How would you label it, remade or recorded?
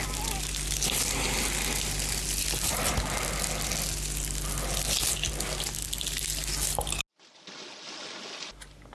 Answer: recorded